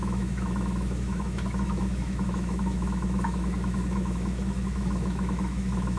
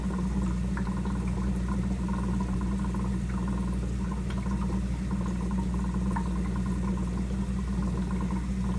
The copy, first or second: first